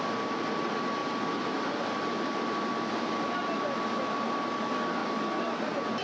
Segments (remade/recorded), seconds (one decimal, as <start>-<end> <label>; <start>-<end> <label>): 0.0-6.0 recorded